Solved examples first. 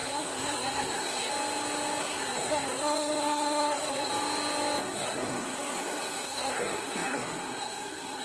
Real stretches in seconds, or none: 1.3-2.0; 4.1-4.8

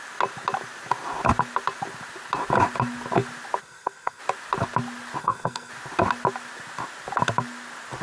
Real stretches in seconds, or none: 0.0-3.6; 4.2-5.2; 5.7-8.0

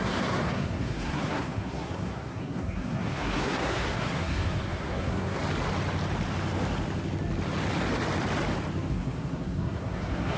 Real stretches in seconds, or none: 5.4-8.9

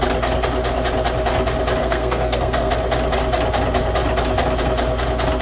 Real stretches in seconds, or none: 0.0-1.8; 2.7-5.4

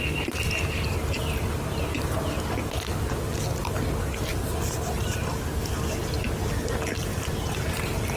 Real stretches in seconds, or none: 0.0-8.2